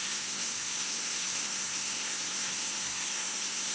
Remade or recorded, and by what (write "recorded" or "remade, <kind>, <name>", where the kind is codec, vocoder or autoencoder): remade, codec, SNAC